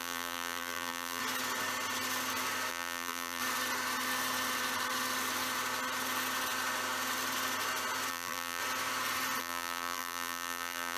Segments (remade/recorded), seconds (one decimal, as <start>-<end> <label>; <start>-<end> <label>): 0.0-1.2 remade; 1.2-2.7 recorded; 2.7-3.4 remade; 3.4-8.1 recorded; 8.1-8.6 remade; 8.6-9.4 recorded; 9.4-11.0 remade